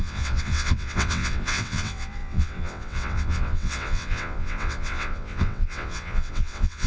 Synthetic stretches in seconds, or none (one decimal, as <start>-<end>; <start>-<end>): 0.0-6.9

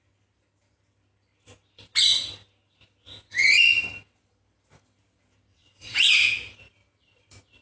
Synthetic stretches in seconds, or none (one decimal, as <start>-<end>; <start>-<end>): 5.5-6.1